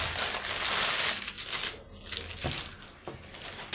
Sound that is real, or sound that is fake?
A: real